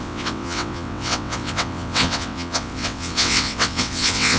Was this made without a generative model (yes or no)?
no